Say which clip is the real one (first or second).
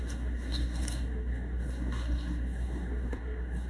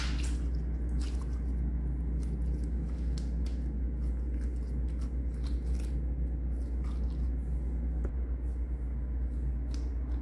second